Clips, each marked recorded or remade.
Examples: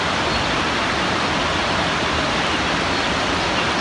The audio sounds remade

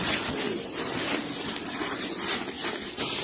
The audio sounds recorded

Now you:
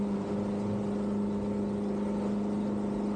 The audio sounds recorded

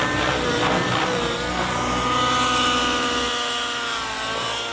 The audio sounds recorded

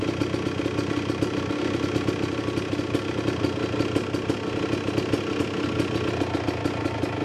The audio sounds recorded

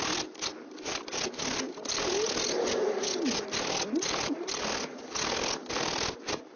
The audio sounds recorded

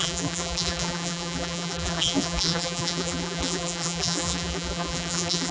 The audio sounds remade